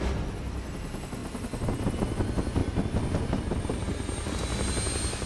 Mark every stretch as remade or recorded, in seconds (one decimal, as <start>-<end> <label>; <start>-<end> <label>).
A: 0.0-5.3 recorded